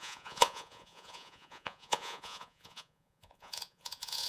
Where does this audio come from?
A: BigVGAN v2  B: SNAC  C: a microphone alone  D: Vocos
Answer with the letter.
D